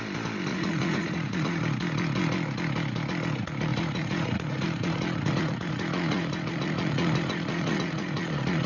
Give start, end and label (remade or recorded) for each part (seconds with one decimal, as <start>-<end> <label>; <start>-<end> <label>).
0.0-0.5 recorded; 0.5-1.6 remade; 1.6-3.7 recorded; 3.7-8.7 remade